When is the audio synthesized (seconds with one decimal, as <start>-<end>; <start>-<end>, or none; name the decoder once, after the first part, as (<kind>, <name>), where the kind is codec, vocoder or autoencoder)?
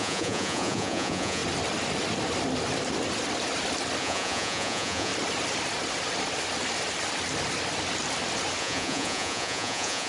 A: 0.0-1.4 (vocoder, Vocos); 4.0-5.1; 8.6-10.1